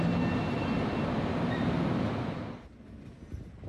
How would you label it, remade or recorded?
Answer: recorded